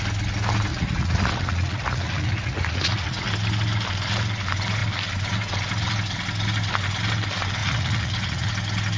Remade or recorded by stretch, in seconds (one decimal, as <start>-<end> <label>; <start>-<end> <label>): 0.0-0.7 recorded; 0.7-3.3 remade; 3.3-7.6 recorded; 7.6-8.5 remade; 8.5-9.0 recorded